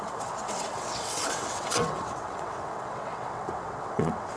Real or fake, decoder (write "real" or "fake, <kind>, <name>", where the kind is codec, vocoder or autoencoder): fake, vocoder, WaveNeXt